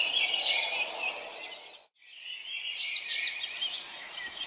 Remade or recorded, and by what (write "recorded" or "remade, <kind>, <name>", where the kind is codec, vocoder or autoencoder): recorded